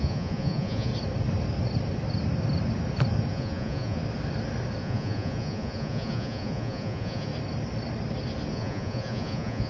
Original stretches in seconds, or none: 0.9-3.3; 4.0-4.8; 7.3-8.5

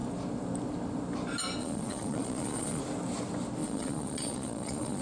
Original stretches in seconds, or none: 0.0-1.6; 2.8-3.6

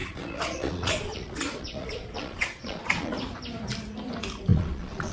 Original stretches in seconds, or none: 3.1-4.5

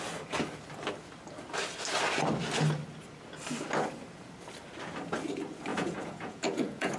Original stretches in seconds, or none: 0.0-5.7

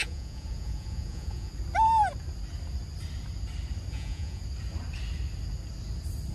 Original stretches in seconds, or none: 1.5-3.9; 4.4-6.3

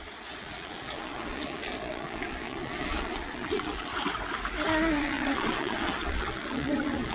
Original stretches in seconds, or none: 3.9-5.0

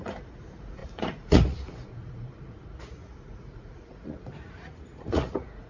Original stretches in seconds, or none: none